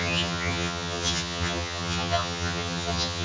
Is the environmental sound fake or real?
fake